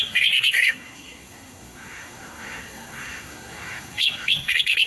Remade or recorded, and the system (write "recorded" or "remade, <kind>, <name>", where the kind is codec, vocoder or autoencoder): remade, codec, SNAC